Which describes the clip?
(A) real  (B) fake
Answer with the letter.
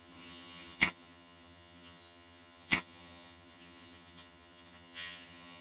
B